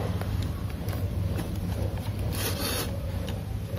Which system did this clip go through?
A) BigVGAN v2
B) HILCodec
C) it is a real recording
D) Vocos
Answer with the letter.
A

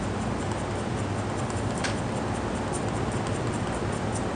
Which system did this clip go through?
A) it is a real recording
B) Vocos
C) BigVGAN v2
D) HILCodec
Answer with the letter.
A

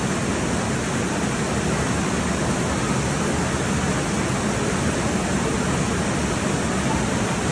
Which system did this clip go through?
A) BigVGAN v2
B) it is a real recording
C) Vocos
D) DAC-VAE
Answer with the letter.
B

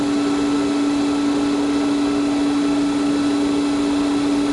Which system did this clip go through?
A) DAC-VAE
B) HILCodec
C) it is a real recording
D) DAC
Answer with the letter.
C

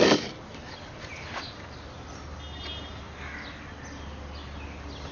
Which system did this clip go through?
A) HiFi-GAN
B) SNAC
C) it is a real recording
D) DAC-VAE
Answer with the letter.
C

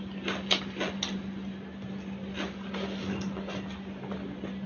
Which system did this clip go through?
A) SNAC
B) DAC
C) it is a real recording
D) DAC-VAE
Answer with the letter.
C